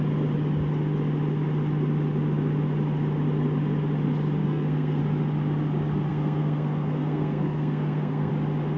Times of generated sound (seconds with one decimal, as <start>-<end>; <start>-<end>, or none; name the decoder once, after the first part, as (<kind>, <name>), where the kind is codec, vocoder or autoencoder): 4.4-5.0 (codec, SNAC); 6.1-8.3